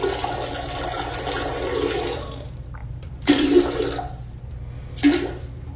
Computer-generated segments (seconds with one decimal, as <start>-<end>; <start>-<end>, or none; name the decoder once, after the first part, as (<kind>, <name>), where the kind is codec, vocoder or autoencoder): 2.8-3.6 (vocoder, BigVGAN v2)

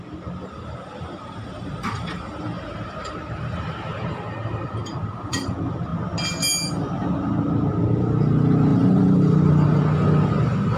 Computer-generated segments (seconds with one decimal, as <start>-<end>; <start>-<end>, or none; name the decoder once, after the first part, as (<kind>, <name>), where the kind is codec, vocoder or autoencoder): 0.4-5.5 (vocoder, BigVGAN v2); 8.7-9.8

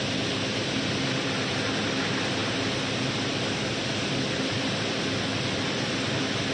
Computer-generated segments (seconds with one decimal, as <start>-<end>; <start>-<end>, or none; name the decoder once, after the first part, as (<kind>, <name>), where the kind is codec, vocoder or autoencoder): none

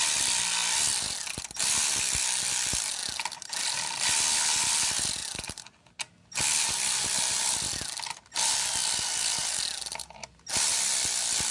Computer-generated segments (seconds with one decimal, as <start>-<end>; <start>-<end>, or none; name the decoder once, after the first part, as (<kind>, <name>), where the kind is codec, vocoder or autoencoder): 5.2-5.9 (vocoder, BigVGAN v2)

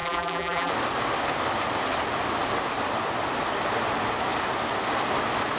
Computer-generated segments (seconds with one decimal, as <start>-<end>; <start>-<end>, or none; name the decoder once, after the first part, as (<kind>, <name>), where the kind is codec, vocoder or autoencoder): 0.0-0.7 (vocoder, BigVGAN v2)